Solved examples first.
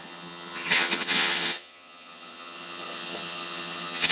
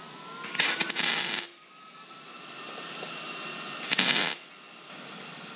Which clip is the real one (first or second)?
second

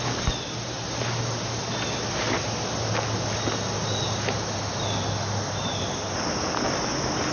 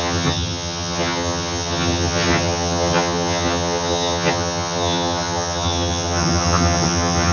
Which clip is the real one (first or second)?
first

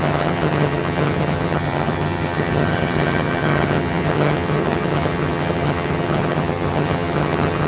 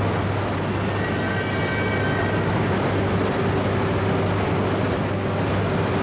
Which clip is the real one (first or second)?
second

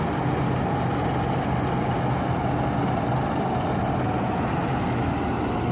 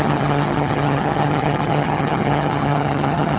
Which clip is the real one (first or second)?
first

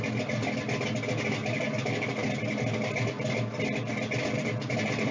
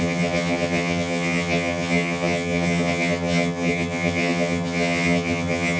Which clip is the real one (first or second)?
first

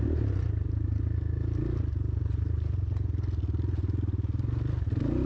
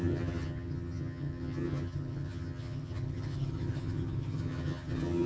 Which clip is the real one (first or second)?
first